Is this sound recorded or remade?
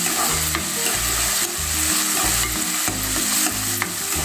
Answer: recorded